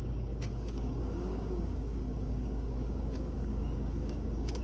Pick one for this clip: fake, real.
fake